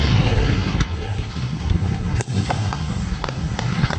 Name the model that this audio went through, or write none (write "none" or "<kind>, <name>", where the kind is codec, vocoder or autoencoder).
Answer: codec, SNAC